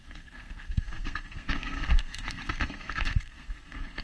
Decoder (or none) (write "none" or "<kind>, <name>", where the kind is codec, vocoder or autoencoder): codec, SNAC